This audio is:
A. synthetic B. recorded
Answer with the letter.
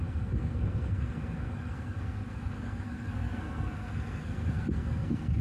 A